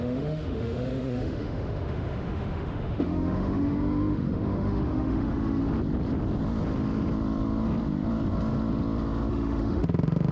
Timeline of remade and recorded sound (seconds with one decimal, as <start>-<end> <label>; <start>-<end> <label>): 0.0-5.6 remade; 5.6-9.3 recorded; 9.3-10.3 remade